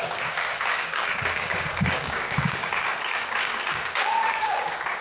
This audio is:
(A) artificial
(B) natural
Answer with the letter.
A